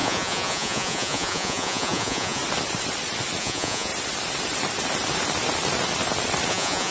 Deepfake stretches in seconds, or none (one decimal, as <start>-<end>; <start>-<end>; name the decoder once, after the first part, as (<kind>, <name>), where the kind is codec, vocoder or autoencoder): 0.0-2.4 (vocoder, Vocos); 3.4-3.9; 6.5-6.9